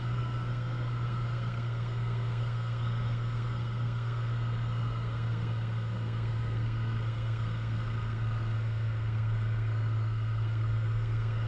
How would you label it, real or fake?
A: fake